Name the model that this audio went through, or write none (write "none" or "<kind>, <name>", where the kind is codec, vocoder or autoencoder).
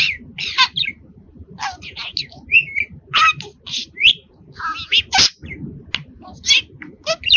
none